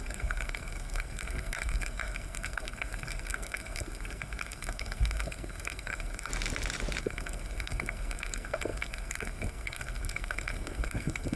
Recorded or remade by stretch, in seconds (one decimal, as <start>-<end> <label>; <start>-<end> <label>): 0.0-6.3 remade; 6.3-7.0 recorded; 7.0-11.4 remade